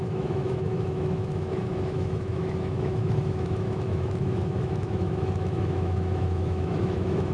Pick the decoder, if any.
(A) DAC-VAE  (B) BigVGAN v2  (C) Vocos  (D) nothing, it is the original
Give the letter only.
A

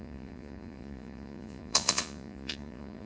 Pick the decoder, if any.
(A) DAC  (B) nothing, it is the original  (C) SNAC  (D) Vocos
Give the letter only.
D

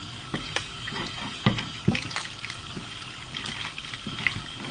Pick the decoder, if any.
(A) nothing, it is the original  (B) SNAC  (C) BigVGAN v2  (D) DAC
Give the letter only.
D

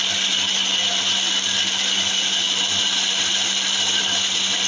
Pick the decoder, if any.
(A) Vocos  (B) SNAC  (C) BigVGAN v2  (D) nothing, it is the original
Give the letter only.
D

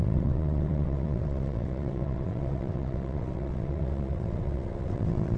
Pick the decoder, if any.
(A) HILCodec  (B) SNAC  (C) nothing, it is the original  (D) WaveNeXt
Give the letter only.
D